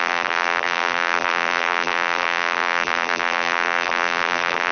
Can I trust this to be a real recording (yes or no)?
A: no